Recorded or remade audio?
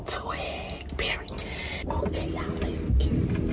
recorded